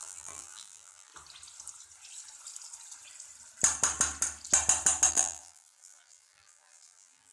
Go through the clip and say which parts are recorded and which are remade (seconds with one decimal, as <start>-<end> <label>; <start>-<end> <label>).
0.0-1.1 remade; 1.1-5.1 recorded; 5.1-7.3 remade

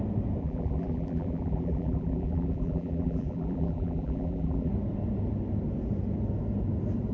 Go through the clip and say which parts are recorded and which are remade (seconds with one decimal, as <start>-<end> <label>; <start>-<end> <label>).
0.0-0.4 recorded; 0.4-4.7 remade; 4.7-7.1 recorded

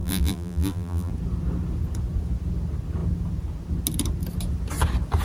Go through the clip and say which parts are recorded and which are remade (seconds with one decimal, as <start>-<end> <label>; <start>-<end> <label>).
0.0-1.1 remade; 1.1-5.2 recorded

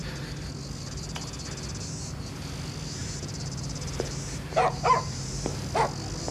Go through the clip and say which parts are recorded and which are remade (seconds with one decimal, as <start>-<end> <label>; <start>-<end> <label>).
0.0-3.0 recorded; 3.0-5.7 remade; 5.7-6.3 recorded